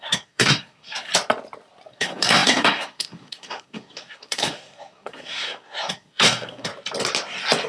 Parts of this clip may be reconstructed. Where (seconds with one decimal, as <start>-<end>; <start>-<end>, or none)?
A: 0.0-1.1; 1.9-6.7